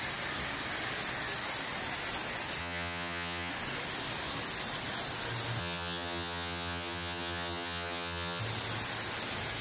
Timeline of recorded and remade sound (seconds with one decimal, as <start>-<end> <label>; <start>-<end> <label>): 0.0-2.6 recorded; 2.6-3.5 remade; 3.5-5.6 recorded; 5.6-8.4 remade; 8.4-9.6 recorded